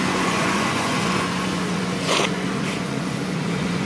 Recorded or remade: remade